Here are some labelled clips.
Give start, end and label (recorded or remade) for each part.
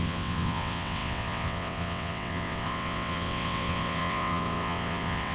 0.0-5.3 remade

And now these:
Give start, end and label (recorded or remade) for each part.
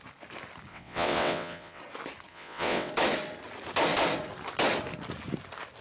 0.0-0.7 recorded; 0.7-1.8 remade; 1.8-2.3 recorded; 2.3-2.9 remade; 2.9-5.8 recorded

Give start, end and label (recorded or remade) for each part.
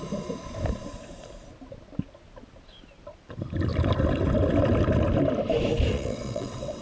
0.0-5.9 recorded; 5.9-6.8 remade